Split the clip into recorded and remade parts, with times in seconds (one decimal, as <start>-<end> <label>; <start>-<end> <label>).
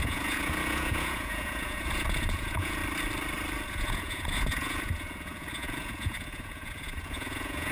0.0-2.8 remade; 2.8-3.7 recorded; 3.7-7.7 remade